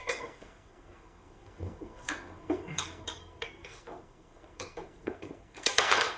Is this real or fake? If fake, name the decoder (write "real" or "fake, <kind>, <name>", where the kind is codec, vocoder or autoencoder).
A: fake, codec, SNAC